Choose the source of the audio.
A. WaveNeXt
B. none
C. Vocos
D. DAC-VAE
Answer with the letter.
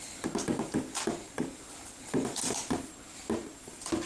B